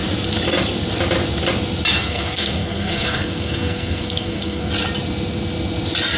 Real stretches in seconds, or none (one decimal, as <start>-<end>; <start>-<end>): 0.0-1.9; 4.7-6.2